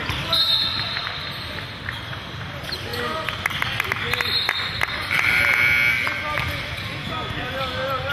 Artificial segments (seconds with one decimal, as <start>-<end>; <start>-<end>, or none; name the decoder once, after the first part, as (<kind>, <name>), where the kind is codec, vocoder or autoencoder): none